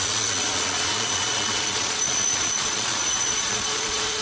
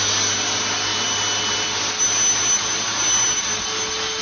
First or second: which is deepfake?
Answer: first